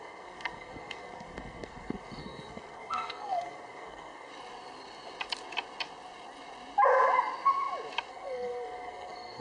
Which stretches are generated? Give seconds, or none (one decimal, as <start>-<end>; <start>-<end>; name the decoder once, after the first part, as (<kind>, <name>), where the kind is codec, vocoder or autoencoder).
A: 0.0-4.3 (codec, SNAC); 8.1-9.4